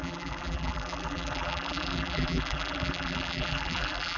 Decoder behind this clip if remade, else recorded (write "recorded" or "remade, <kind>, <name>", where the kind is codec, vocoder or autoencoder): remade, vocoder, BigVGAN v2